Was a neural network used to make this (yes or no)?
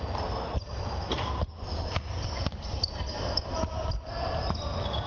no